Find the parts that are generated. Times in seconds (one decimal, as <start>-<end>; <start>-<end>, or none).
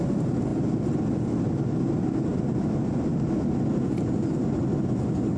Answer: 0.5-1.5